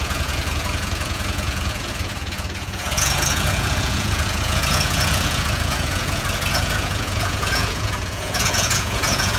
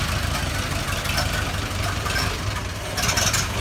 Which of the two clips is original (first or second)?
second